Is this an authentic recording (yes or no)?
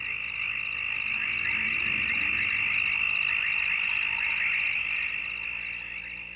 yes